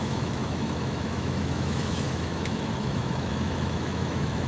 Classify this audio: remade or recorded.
remade